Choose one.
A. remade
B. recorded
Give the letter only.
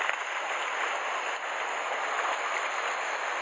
B